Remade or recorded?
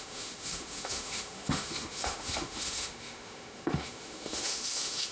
remade